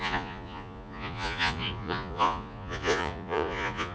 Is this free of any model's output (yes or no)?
no